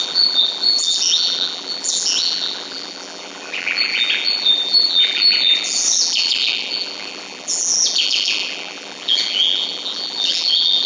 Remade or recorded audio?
remade